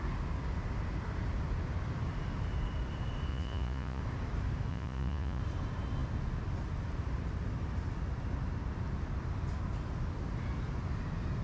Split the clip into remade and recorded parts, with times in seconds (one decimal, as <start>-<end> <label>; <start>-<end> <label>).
0.0-3.3 recorded; 3.3-4.0 remade; 4.0-4.7 recorded; 4.7-5.4 remade; 5.4-11.4 recorded